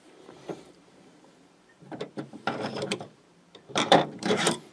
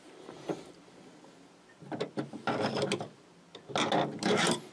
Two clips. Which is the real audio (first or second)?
second